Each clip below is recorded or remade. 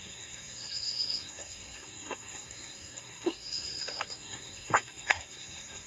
remade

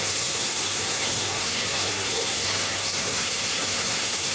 remade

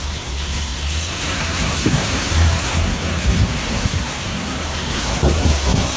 remade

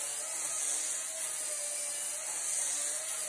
recorded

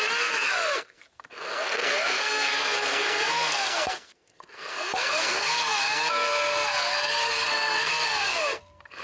remade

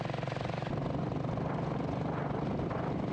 recorded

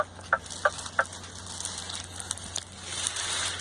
recorded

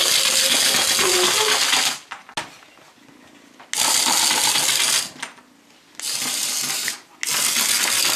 recorded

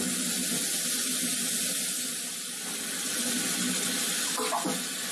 recorded